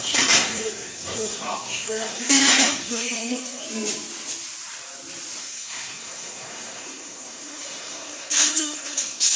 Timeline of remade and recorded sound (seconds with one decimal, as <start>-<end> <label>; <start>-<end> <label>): 0.0-3.6 remade; 3.6-5.4 recorded; 5.4-9.4 remade